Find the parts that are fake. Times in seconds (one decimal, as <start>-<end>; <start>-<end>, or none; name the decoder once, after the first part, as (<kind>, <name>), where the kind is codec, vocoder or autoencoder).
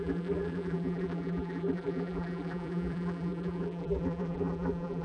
0.0-5.0 (vocoder, BigVGAN v2)